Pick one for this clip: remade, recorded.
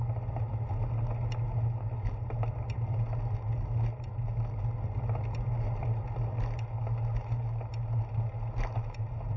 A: recorded